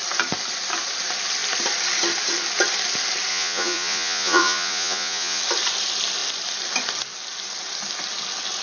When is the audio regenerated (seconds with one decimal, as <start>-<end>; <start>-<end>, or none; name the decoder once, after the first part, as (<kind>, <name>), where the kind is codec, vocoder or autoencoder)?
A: 3.3-5.4 (vocoder, Vocos)